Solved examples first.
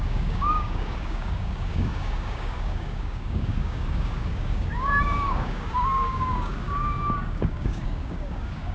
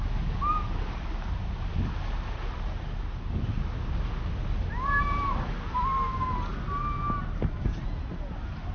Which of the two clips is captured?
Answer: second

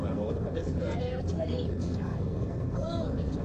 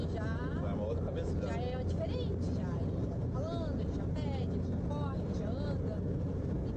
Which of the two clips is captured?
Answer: second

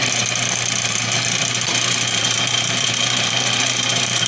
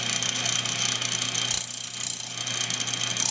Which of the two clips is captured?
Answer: second